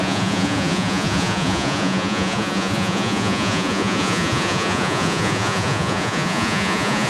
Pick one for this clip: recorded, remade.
remade